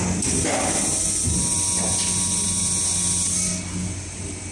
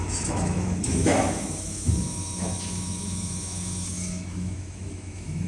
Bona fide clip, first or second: first